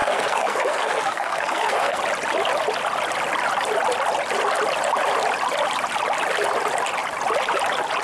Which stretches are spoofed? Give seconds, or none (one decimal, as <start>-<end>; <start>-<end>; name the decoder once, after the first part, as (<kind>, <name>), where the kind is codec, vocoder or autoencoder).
0.0-2.0 (codec, SNAC)